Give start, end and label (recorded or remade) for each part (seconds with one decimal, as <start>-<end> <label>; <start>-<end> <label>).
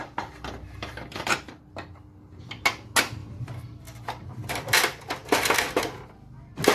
0.0-1.6 remade; 1.6-3.2 recorded; 3.2-4.6 remade; 4.6-5.2 recorded; 5.2-5.8 remade; 5.8-6.7 recorded